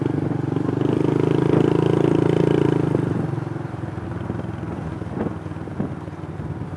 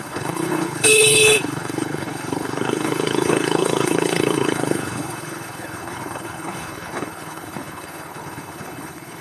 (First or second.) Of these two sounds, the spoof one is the second